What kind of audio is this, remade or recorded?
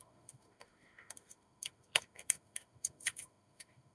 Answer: remade